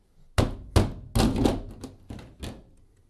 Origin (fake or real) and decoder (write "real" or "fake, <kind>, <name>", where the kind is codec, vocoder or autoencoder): real